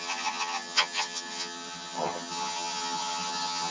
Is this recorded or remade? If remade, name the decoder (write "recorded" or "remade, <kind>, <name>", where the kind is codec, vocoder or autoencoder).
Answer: remade, vocoder, HiFi-GAN